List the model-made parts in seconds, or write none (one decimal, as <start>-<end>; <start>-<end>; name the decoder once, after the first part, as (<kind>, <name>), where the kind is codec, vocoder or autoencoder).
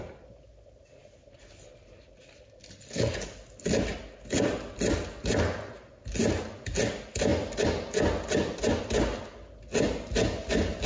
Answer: none